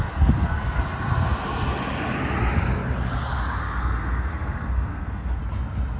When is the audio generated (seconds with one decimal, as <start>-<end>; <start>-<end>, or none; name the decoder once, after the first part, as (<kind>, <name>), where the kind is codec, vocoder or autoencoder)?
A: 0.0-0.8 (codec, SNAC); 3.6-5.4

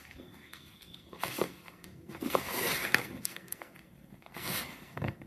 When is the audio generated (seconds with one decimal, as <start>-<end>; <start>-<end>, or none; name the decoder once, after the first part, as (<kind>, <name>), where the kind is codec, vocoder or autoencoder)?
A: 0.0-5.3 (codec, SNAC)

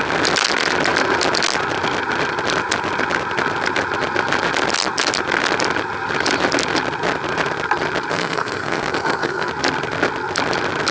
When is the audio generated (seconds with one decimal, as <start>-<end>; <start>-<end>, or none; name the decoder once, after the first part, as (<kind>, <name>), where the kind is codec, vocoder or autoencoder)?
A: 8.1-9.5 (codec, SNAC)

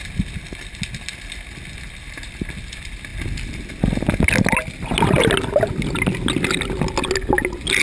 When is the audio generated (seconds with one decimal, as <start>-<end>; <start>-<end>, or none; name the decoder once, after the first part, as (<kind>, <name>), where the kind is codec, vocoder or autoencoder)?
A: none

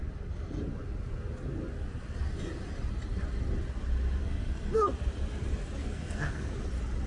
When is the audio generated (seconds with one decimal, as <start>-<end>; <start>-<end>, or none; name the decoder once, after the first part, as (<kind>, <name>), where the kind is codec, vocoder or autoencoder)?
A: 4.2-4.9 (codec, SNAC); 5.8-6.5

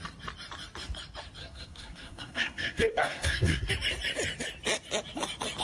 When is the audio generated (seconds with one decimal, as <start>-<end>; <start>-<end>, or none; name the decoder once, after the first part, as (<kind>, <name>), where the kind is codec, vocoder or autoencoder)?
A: 1.4-3.7 (codec, SNAC)